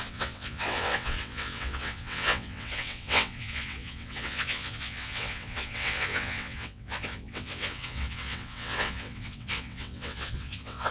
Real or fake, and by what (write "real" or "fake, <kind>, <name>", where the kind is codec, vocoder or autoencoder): fake, vocoder, WaveNeXt